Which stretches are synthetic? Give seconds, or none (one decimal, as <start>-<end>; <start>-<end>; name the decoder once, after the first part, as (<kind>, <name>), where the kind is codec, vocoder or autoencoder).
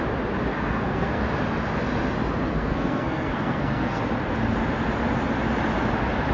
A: 0.5-1.2 (codec, SNAC); 2.5-4.0